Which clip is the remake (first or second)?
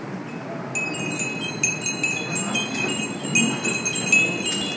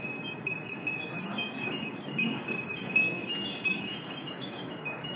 second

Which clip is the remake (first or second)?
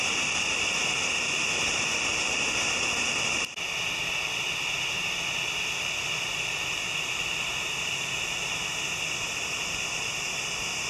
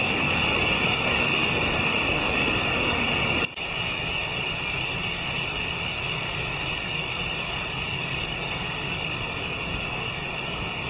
second